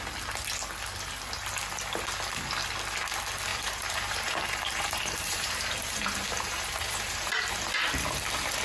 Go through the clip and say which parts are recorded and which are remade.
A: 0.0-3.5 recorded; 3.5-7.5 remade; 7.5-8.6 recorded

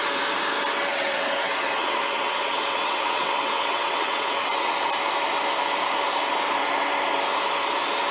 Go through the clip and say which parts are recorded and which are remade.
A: 0.0-0.9 recorded; 0.9-4.7 remade; 4.7-8.1 recorded

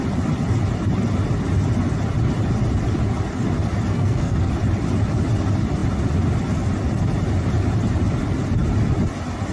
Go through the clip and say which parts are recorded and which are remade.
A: 0.0-3.9 recorded; 3.9-4.5 remade; 4.5-9.5 recorded

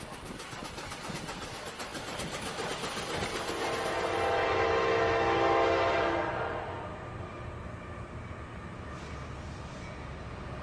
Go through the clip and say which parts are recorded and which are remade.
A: 0.0-10.6 recorded

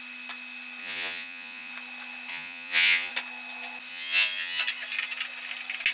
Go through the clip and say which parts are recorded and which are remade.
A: 0.0-0.8 recorded; 0.8-1.7 remade; 1.7-2.3 recorded; 2.3-3.1 remade; 3.1-3.9 recorded; 3.9-4.6 remade; 4.6-5.9 recorded

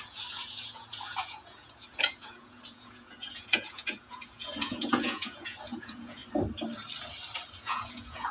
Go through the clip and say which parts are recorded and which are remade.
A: 0.0-6.2 remade; 6.2-7.6 recorded; 7.6-8.3 remade